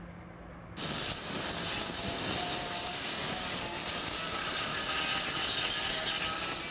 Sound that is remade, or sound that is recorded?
recorded